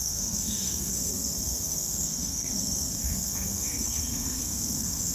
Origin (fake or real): fake